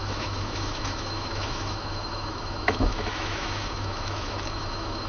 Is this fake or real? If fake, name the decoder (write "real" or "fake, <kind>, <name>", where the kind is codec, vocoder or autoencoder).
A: fake, autoencoder, DAC-VAE